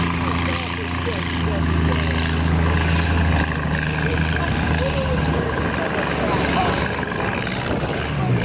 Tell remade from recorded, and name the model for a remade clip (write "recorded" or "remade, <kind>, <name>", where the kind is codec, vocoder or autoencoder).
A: recorded